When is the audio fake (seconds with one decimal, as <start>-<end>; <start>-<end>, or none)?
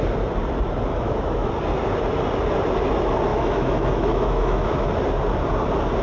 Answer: 0.9-1.5; 3.3-4.9